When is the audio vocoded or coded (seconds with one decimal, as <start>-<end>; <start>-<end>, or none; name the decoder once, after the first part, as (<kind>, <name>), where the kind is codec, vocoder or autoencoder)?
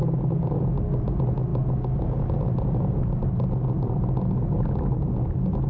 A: none